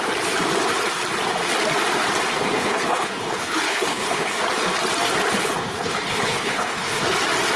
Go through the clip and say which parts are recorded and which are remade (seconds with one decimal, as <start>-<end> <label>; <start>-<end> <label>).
0.0-2.6 recorded; 2.6-4.4 remade; 4.4-5.4 recorded; 5.4-7.0 remade; 7.0-7.6 recorded